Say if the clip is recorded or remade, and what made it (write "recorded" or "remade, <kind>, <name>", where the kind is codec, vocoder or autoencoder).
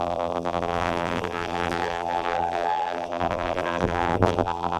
remade, vocoder, BigVGAN v2